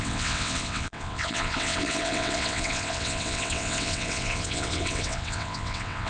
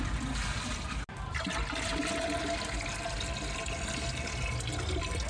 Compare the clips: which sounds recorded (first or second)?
second